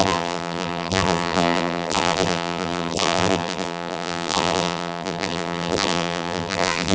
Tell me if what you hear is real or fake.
fake